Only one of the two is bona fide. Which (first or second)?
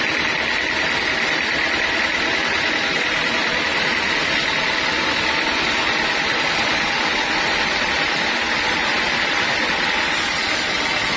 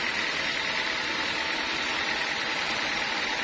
first